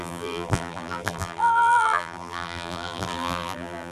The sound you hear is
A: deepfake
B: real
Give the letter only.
A